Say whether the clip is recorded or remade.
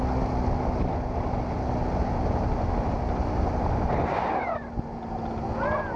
recorded